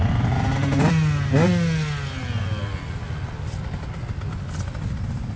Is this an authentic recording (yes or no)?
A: yes